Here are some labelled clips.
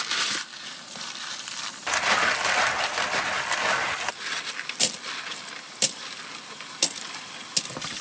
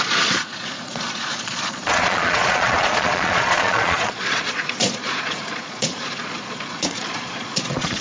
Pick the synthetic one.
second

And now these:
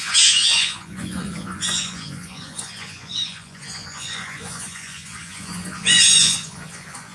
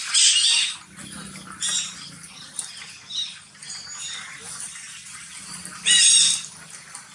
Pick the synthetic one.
first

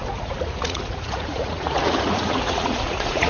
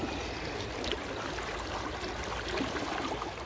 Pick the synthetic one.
first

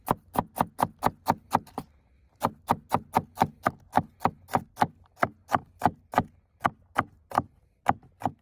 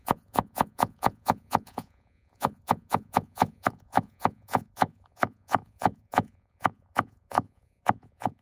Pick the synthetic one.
second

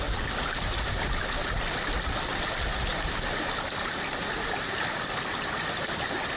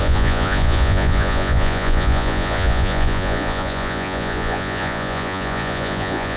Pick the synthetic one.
second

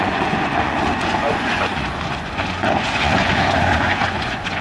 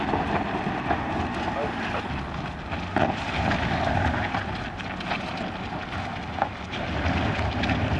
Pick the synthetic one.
first